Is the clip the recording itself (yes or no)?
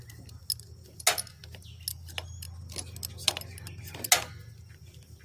yes